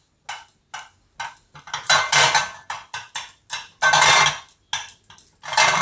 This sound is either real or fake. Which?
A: real